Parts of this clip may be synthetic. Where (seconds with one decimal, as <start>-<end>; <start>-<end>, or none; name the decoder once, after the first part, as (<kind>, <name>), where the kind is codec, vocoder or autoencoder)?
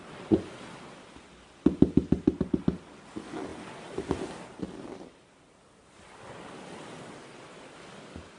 none